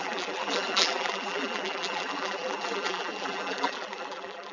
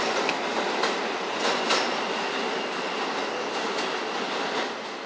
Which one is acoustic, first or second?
second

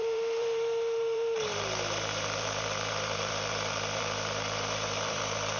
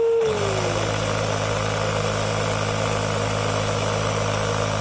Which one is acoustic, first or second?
second